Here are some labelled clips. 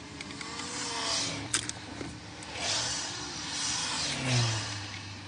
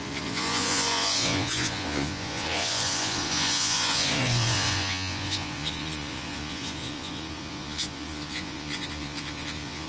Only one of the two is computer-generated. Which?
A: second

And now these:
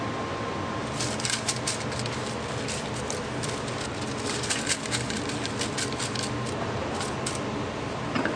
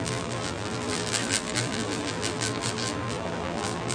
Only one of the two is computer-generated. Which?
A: second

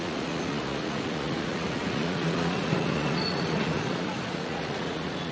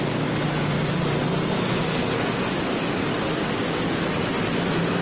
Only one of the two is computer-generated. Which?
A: first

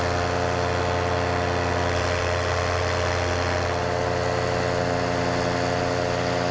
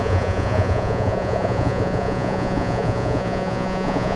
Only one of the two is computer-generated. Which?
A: second